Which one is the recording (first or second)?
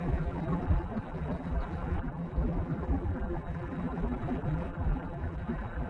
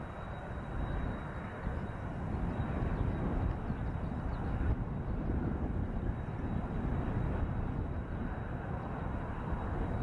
second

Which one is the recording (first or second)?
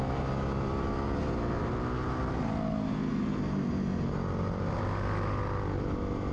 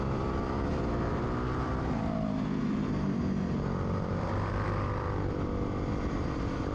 first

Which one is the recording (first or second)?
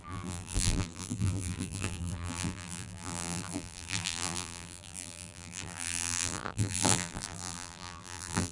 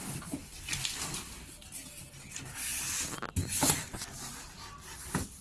second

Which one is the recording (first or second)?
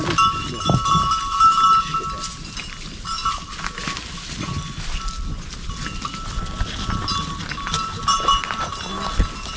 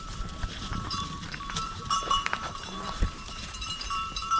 first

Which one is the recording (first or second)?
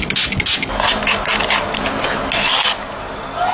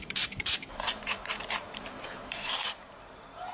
first